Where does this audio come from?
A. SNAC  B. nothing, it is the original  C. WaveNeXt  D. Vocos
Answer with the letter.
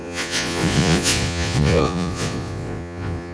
D